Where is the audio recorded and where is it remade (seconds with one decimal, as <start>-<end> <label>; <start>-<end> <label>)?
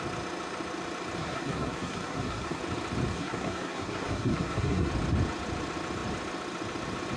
0.0-1.2 recorded; 1.2-2.6 remade; 2.6-3.1 recorded; 3.1-4.9 remade; 4.9-7.2 recorded